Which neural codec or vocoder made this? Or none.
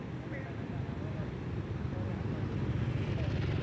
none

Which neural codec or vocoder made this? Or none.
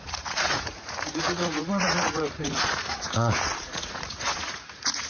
vocoder, Vocos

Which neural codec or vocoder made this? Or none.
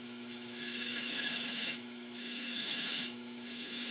autoencoder, DAC-VAE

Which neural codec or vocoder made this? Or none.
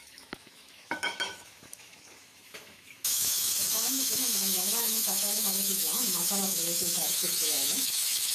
autoencoder, DAC-VAE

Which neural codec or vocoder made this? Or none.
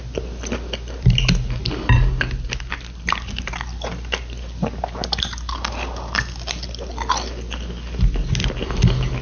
none